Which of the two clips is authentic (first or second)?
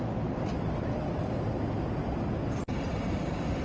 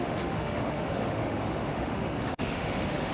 first